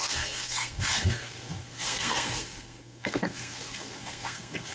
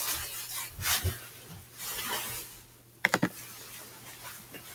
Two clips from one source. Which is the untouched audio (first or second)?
second